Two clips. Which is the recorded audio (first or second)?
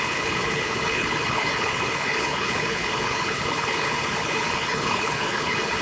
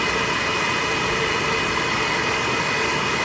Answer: second